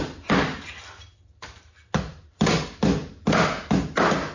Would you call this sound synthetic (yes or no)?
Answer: no